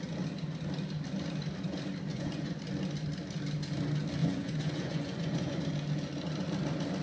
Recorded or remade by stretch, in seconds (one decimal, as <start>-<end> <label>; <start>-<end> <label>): 0.0-2.1 recorded; 2.1-2.6 remade; 2.6-4.2 recorded; 4.2-5.6 remade; 5.6-7.0 recorded